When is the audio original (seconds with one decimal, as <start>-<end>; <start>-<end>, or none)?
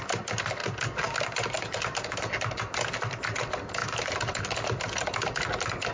0.0-5.9